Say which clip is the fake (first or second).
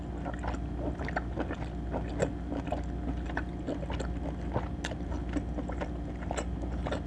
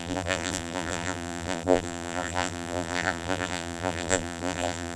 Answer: second